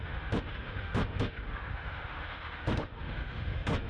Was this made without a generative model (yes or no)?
no